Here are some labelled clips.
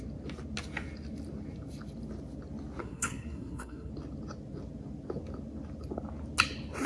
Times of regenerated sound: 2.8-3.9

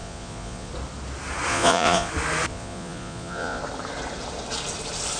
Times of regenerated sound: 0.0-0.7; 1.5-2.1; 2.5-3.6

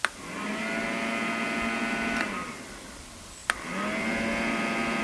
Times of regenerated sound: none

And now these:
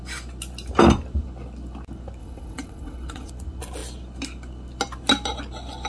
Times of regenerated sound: 2.2-3.3

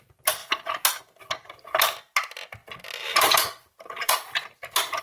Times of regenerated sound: 2.6-5.0

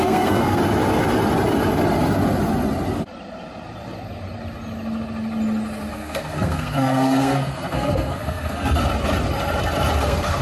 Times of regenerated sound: 0.0-0.6; 5.9-8.8; 10.0-10.4

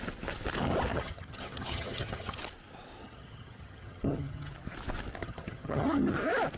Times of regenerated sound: 0.9-2.4; 3.0-4.5; 5.2-6.1